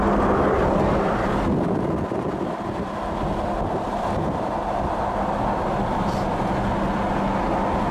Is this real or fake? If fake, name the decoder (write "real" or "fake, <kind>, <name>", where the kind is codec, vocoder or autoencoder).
real